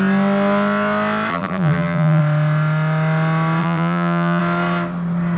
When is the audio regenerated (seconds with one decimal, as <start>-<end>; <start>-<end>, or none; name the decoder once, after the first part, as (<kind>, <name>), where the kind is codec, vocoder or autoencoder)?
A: 1.3-2.2 (vocoder, BigVGAN v2); 3.6-4.4